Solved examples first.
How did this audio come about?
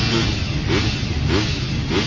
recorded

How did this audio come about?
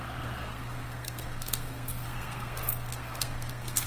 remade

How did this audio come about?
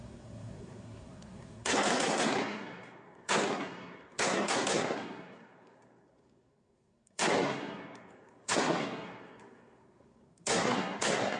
remade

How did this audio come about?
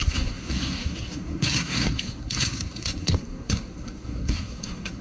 remade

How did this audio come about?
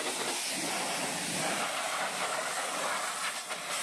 recorded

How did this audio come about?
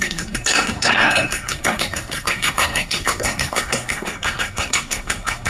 remade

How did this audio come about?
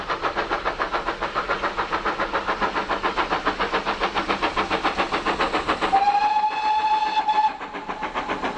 recorded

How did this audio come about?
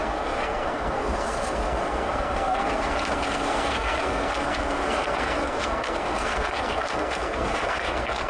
remade